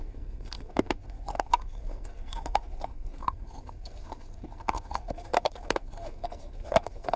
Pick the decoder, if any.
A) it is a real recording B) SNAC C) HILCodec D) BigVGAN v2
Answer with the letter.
B